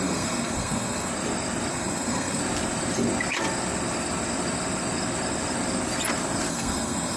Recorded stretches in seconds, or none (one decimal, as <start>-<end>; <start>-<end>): 1.1-1.7; 2.4-6.5